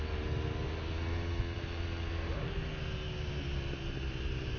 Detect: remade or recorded recorded